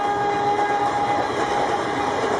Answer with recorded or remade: recorded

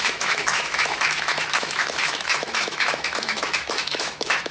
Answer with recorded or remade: remade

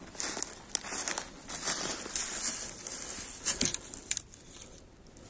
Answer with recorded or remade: recorded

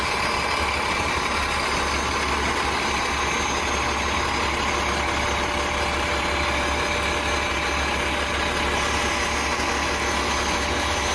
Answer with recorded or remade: recorded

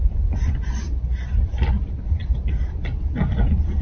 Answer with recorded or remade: recorded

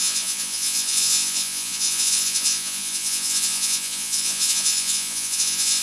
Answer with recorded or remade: remade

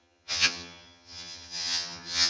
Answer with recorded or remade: remade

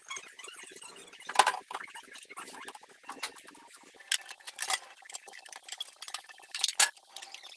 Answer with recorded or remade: recorded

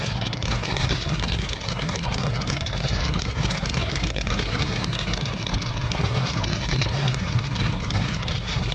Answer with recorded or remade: remade